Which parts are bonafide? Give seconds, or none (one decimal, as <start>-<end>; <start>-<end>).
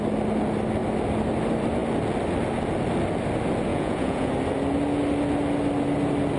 0.0-3.7; 4.3-6.4